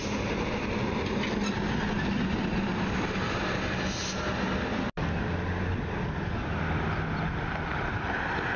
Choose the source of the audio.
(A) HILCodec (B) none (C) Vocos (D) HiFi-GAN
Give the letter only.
B